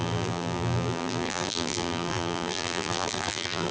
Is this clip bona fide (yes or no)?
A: no